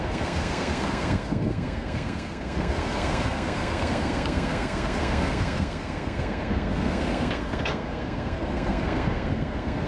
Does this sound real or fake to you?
fake